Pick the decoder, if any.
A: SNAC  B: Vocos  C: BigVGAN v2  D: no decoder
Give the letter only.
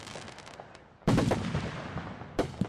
D